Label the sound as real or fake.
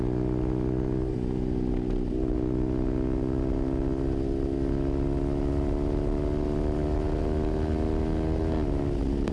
real